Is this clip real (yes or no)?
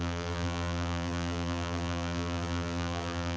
no